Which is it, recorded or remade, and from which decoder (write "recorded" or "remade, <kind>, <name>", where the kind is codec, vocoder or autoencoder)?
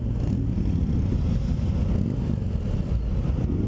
recorded